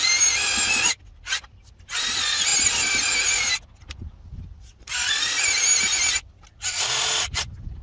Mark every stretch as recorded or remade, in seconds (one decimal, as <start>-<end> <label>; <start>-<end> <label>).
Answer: 0.0-7.8 recorded